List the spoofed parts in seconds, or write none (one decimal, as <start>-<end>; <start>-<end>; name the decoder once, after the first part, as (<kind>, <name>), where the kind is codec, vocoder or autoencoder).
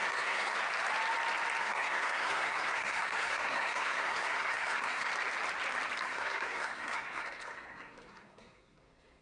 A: 0.0-0.6 (codec, SNAC); 1.6-5.1; 6.0-9.2